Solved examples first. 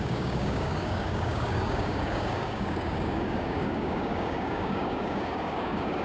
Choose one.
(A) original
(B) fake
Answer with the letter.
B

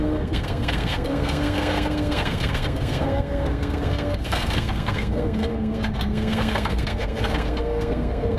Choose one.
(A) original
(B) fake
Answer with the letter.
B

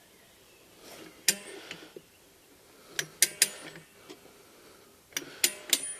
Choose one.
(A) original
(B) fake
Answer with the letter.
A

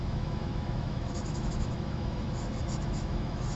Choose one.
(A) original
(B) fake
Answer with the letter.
B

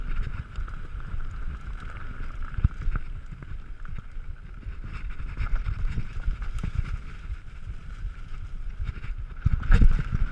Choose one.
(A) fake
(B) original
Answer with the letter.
B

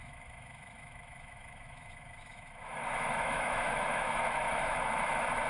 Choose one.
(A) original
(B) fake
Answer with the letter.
B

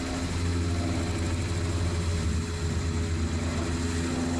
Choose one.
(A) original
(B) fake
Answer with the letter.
A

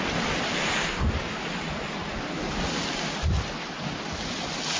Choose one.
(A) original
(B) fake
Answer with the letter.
A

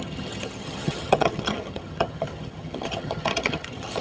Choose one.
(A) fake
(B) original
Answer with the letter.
A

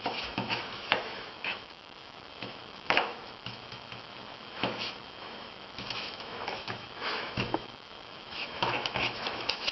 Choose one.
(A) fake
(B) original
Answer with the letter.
A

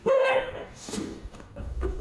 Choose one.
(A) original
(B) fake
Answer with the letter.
B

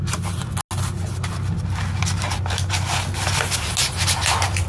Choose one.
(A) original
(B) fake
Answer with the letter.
A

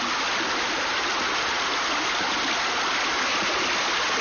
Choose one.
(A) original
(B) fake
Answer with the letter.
A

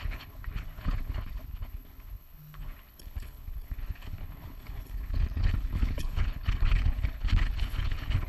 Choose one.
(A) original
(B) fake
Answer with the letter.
B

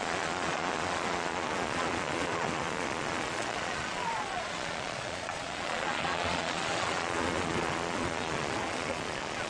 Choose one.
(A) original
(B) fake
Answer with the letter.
B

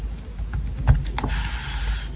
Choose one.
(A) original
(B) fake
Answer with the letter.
A